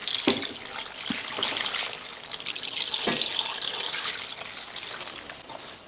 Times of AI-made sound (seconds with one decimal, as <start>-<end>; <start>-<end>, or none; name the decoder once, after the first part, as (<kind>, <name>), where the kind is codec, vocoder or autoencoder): none